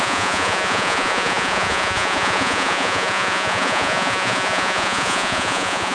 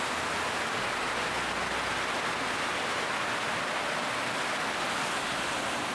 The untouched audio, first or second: second